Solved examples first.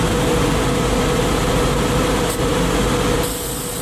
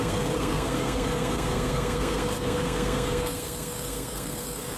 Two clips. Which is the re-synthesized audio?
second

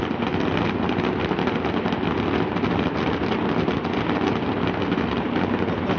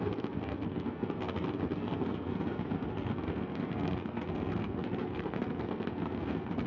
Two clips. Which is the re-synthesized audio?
second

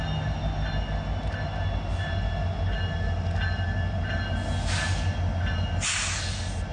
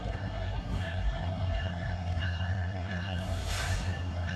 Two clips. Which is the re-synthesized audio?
second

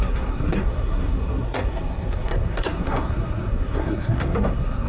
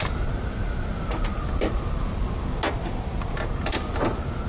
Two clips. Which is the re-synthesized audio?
first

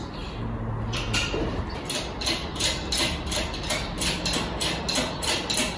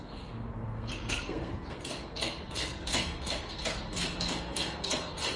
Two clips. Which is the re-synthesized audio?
second